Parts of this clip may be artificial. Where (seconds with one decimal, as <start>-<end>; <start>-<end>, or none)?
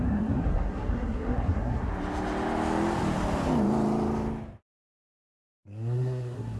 0.0-1.9; 5.0-6.6